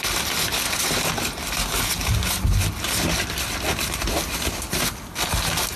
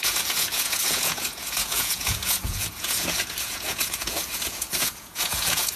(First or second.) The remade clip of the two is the second